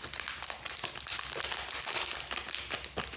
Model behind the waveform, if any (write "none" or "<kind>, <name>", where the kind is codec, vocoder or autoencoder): none